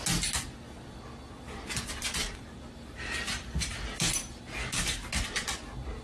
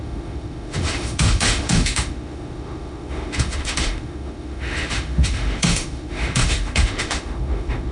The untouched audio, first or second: first